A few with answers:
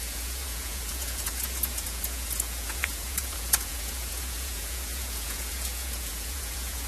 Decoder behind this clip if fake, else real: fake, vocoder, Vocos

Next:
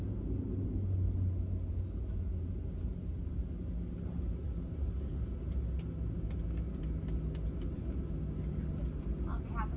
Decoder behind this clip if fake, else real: real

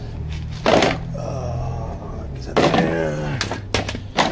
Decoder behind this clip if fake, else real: real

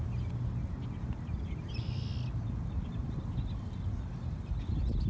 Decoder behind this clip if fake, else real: real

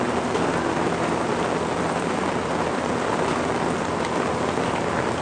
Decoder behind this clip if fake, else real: fake, vocoder, BigVGAN v2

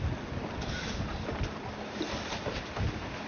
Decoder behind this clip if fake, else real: real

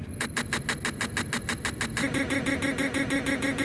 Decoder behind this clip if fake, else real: real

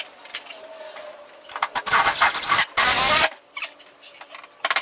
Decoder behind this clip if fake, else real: real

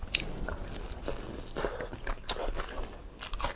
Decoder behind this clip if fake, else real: real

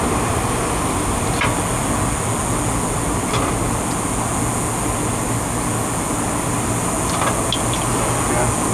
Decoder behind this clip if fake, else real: real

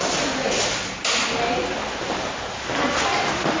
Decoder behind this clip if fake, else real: real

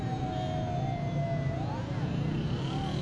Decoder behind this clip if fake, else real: real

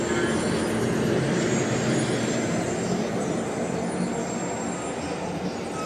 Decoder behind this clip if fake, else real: real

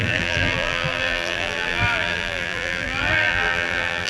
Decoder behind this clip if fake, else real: fake, vocoder, BigVGAN v2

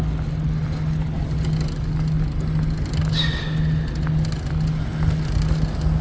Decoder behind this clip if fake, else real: real